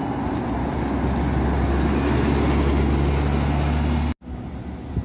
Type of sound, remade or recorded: recorded